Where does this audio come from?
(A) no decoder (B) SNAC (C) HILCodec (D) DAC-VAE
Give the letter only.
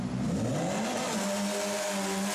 A